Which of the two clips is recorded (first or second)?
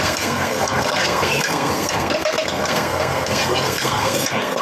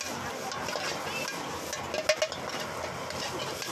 second